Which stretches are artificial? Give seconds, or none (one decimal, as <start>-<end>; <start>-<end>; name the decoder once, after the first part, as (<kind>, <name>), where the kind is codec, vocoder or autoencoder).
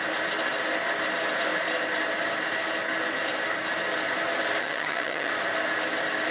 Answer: 4.6-5.3 (vocoder, HiFi-GAN)